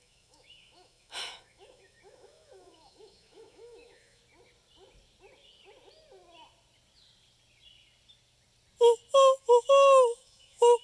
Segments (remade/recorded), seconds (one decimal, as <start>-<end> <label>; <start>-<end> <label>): 0.0-4.2 remade; 4.2-9.4 recorded; 9.4-10.8 remade